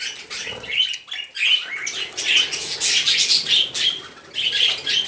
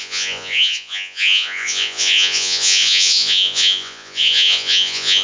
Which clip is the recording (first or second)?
first